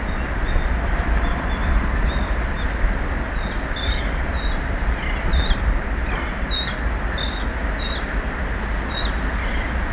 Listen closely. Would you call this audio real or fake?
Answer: real